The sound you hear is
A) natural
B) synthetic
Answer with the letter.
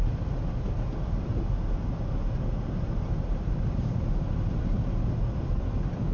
A